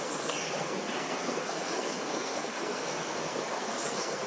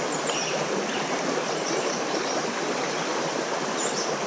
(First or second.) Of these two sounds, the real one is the second